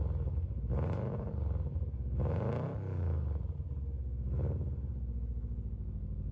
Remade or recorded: recorded